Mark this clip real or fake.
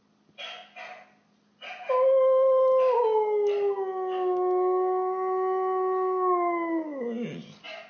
real